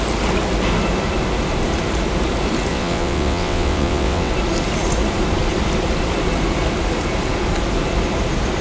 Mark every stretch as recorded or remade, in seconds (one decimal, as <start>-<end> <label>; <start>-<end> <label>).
0.0-2.7 recorded; 2.7-4.3 remade; 4.3-8.6 recorded